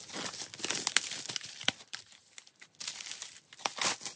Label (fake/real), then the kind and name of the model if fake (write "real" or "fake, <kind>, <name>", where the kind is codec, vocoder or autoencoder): real